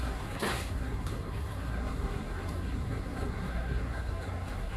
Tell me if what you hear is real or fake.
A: fake